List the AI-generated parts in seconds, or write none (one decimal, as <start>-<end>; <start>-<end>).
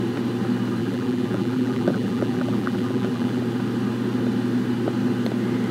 0.8-3.4